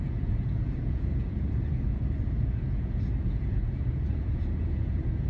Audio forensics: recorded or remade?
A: remade